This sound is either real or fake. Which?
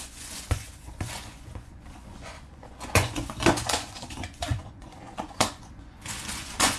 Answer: fake